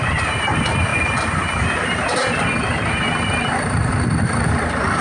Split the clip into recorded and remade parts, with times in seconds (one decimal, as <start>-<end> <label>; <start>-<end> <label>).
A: 0.0-5.0 remade